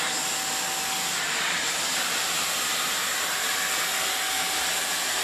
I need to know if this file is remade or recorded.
recorded